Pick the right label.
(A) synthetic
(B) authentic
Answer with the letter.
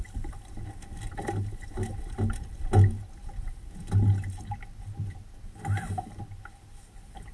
B